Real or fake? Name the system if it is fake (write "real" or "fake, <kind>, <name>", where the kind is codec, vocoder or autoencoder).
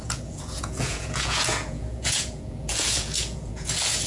fake, vocoder, Vocos